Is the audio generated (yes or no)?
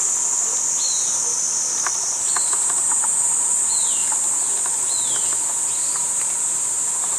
no